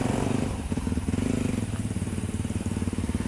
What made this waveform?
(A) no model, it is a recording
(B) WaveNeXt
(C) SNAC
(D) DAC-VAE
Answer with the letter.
A